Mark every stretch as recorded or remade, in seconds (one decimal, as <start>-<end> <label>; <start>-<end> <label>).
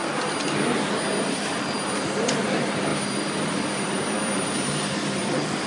0.0-1.1 recorded; 1.1-5.7 remade